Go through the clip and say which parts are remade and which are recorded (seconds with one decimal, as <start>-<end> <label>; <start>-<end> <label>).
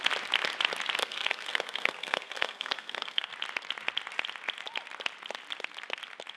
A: 0.0-1.0 recorded; 1.0-3.3 remade; 3.3-6.4 recorded